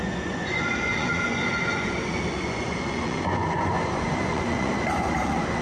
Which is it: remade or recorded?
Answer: remade